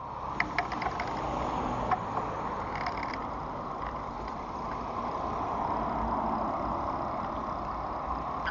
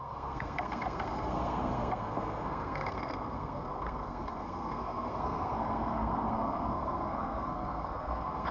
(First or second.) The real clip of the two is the first